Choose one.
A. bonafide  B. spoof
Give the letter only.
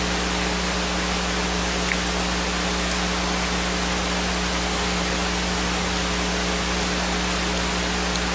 A